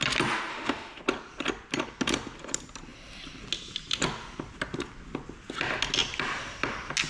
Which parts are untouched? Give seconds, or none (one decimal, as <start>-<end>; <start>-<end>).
0.0-0.5; 1.0-7.1